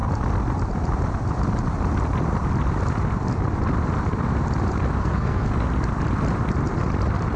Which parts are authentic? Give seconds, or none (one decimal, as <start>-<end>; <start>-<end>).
0.0-5.0; 5.5-7.4